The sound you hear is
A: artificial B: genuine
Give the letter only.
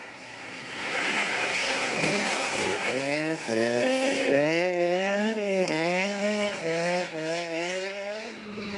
A